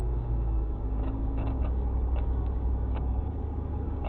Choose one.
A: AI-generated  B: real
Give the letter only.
A